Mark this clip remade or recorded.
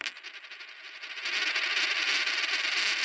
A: recorded